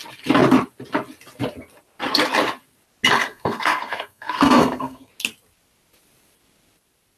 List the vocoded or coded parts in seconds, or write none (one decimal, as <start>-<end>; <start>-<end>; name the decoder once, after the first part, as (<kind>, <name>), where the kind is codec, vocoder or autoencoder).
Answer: 3.1-5.1 (codec, SNAC)